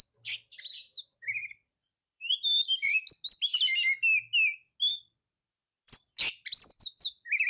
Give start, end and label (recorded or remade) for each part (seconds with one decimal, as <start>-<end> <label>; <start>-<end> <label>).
0.0-1.4 recorded; 1.4-3.0 remade; 3.0-7.5 recorded